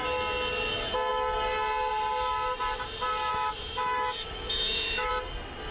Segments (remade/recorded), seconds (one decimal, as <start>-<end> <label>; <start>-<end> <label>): 0.0-3.3 recorded; 3.3-5.1 remade; 5.1-5.7 recorded